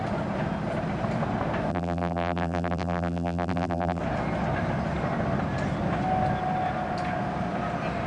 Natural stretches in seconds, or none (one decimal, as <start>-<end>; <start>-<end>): 0.0-1.7; 4.0-8.1